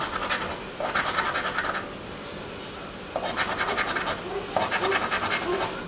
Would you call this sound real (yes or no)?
yes